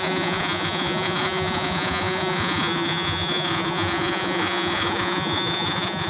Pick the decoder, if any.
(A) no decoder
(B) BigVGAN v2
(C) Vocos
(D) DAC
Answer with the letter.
C